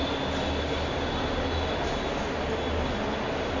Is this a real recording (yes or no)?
yes